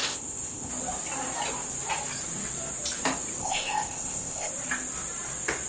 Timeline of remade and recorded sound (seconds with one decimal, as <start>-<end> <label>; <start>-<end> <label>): 0.0-0.7 remade; 0.7-3.4 recorded; 3.4-4.5 remade; 4.5-5.7 recorded